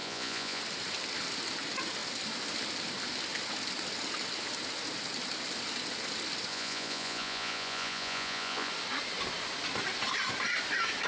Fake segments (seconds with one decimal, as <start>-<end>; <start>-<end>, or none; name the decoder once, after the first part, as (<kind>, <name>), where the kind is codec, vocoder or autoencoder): 0.0-0.6 (vocoder, Vocos); 6.5-8.7